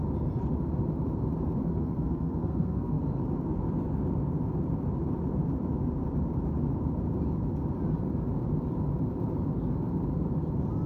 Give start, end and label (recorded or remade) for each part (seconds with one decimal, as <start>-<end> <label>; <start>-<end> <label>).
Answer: 0.0-1.6 recorded; 1.6-3.0 remade; 3.0-10.9 recorded